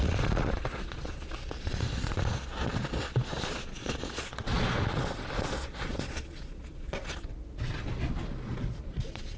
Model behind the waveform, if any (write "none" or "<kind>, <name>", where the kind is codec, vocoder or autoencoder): vocoder, Vocos